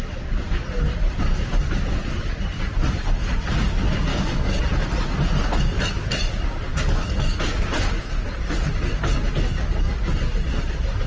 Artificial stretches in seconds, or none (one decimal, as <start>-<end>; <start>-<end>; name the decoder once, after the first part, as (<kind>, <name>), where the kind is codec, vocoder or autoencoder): 4.1-4.6 (codec, DAC); 6.7-7.4